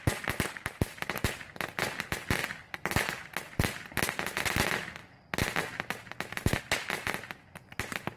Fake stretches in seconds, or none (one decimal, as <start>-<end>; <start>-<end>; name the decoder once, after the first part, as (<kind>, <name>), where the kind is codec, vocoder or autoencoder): 2.4-4.0 (vocoder, BigVGAN v2)